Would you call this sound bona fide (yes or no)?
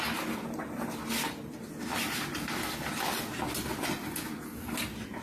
yes